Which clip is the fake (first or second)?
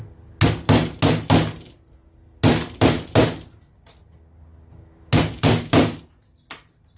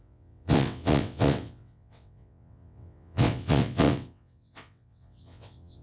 second